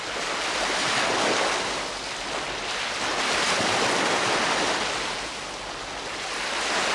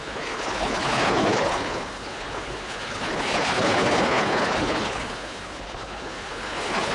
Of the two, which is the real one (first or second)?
first